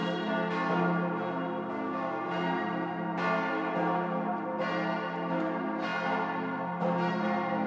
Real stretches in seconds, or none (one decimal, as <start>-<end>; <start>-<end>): 0.0-7.7